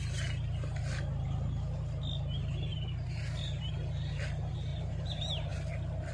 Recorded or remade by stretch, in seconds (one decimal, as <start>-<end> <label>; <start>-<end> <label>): 0.0-2.7 recorded; 2.7-3.7 remade; 3.7-4.7 recorded; 4.7-5.5 remade; 5.5-6.1 recorded